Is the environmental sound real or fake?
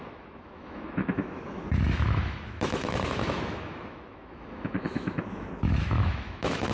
fake